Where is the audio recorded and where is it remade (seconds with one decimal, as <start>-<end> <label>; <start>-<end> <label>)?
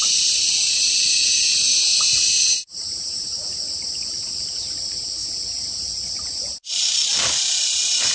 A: 0.0-1.9 recorded; 1.9-4.3 remade; 4.3-5.2 recorded; 5.2-7.3 remade; 7.3-8.1 recorded